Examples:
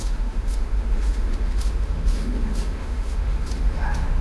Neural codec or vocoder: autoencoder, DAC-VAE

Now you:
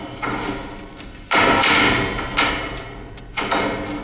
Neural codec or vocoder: none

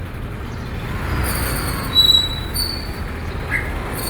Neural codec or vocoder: none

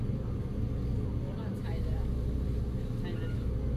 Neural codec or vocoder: none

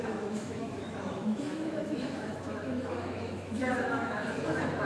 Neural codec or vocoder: autoencoder, DAC-VAE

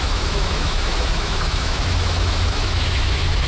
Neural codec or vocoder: autoencoder, DAC-VAE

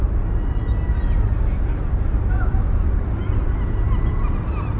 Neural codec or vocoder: none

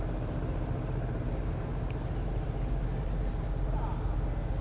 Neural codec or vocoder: none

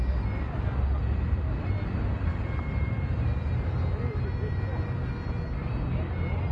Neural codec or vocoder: none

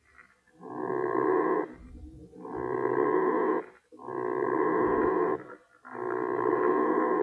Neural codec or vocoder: none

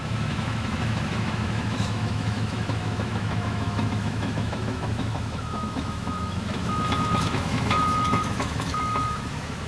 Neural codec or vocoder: autoencoder, DAC-VAE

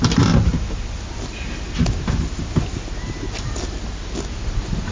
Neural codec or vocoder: none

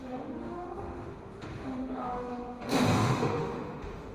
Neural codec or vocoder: autoencoder, DAC-VAE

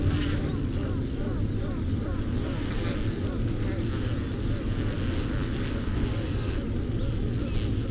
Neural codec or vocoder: none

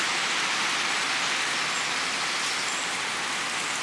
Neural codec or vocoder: none